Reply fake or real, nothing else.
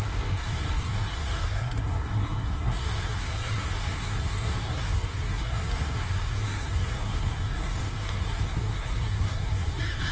fake